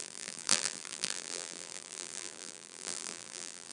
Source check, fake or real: fake